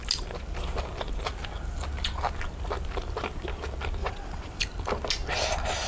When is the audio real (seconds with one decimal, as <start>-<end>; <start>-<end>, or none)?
0.0-4.0; 4.6-5.9